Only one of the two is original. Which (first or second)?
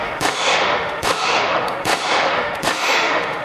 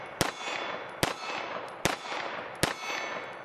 second